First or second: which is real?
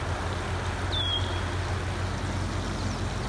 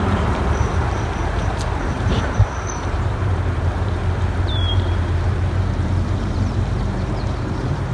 first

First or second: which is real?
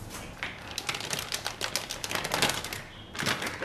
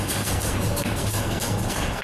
first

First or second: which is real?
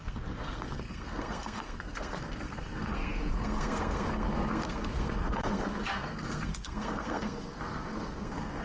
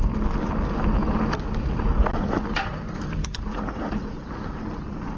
second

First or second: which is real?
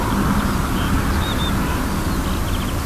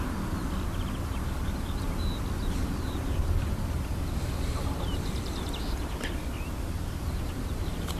first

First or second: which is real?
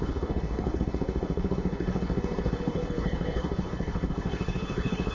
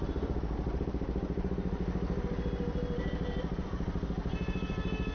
second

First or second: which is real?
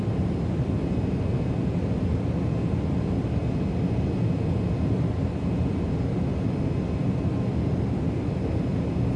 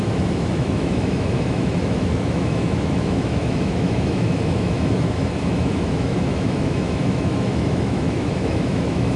first